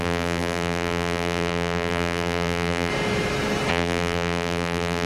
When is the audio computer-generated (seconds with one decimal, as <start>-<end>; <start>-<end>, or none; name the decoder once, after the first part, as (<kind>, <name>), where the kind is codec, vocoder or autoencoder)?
0.0-2.9 (vocoder, BigVGAN v2); 3.7-5.1